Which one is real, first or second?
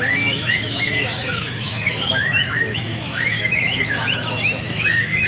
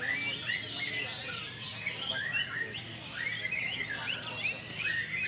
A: second